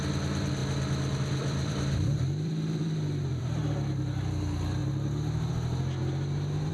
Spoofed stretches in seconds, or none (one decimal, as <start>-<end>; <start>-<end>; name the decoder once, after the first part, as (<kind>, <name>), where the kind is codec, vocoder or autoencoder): 0.6-3.7 (vocoder, BigVGAN v2)